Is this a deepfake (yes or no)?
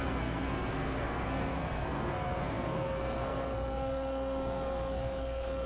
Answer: yes